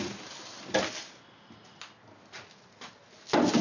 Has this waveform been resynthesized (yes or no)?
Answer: no